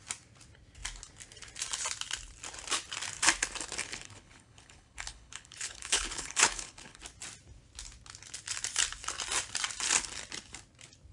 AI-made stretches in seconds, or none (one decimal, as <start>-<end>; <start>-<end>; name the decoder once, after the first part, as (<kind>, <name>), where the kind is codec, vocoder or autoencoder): 3.8-7.0 (codec, HILCodec)